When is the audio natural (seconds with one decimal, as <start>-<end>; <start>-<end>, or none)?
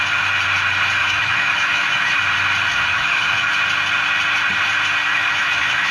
0.0-1.0; 2.2-2.7; 3.5-5.1